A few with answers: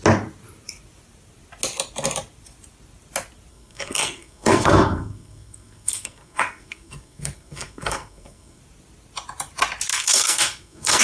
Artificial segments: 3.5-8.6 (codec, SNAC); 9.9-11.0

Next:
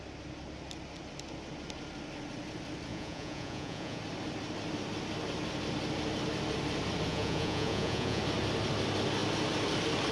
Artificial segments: 2.9-4.0 (vocoder, Vocos); 7.1-8.2

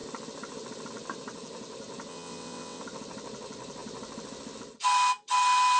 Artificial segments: 2.1-2.8 (vocoder, WaveNeXt)

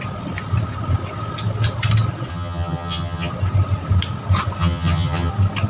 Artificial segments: 2.3-3.3 (vocoder, HiFi-GAN); 4.6-5.3

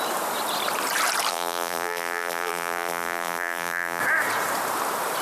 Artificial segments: 1.3-4.0 (vocoder, BigVGAN v2)

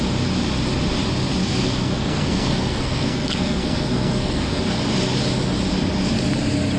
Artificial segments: 1.4-4.6 (codec, SNAC)

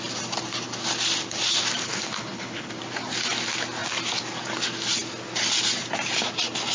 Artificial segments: 1.8-2.7 (codec, HILCodec)

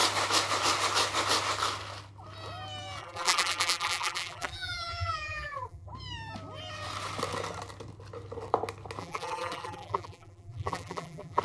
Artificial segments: 3.0-5.9 (vocoder, BigVGAN v2); 9.0-11.4